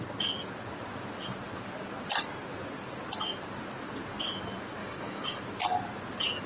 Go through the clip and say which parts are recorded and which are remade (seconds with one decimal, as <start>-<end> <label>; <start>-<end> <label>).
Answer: 0.0-4.8 recorded; 4.8-5.4 remade; 5.4-6.5 recorded